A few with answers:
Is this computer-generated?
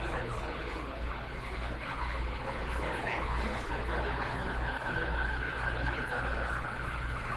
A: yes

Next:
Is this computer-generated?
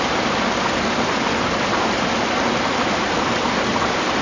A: no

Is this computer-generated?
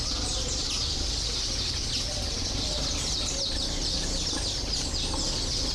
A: no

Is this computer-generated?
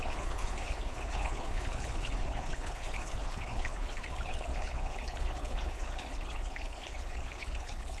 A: yes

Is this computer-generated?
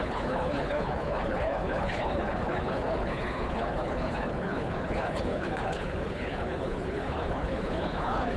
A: yes